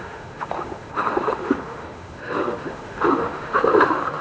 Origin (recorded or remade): remade